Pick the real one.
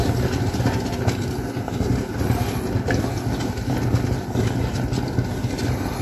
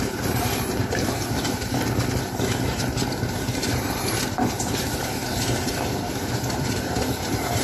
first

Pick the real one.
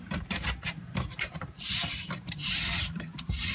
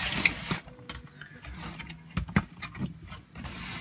second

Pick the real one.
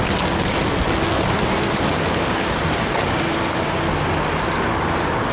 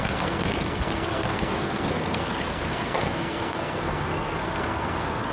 first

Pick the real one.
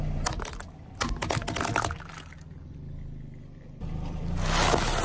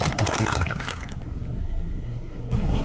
first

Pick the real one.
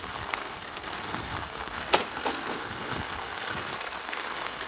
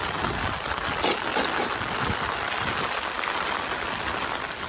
second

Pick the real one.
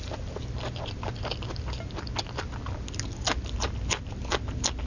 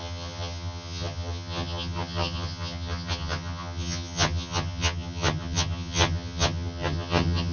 first